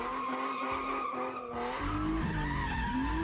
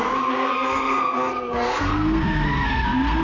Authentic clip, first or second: first